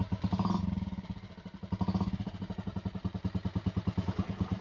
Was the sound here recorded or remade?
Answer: recorded